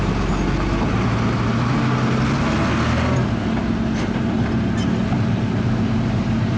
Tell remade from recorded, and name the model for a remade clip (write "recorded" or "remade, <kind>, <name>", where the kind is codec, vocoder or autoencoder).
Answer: recorded